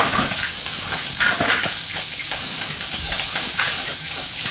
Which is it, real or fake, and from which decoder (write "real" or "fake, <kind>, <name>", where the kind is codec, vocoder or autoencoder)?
fake, codec, DAC